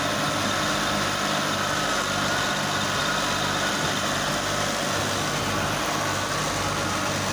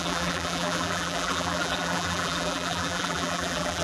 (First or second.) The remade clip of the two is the second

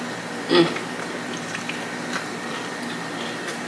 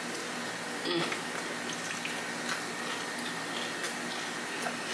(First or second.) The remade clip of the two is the first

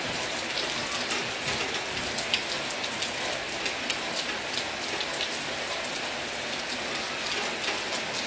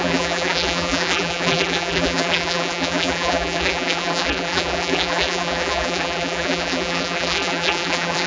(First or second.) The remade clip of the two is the second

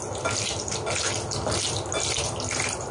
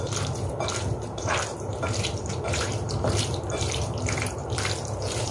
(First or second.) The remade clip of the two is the second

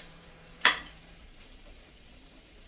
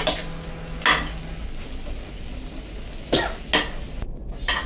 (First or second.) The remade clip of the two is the first